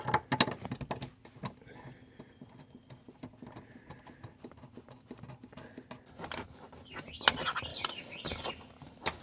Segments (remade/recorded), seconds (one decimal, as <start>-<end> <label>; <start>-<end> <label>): 0.0-7.7 recorded; 7.7-9.2 remade